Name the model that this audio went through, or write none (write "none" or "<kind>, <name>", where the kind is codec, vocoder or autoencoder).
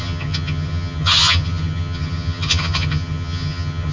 vocoder, HiFi-GAN